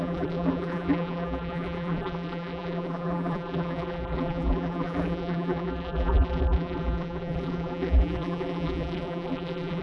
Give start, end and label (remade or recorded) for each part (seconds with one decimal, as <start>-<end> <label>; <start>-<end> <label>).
0.0-9.8 remade